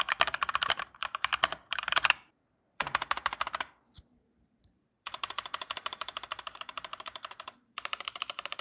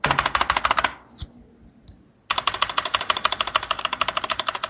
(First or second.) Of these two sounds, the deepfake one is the first